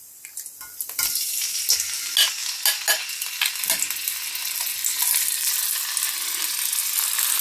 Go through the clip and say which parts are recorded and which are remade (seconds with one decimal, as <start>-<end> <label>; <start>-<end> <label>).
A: 0.0-7.4 recorded